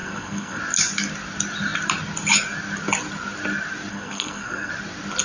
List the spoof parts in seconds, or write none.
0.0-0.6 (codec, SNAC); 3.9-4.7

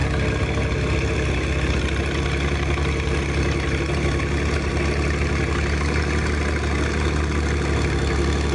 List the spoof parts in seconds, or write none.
none

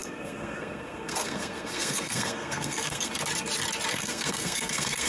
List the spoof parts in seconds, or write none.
0.0-3.1 (codec, SNAC); 3.9-5.1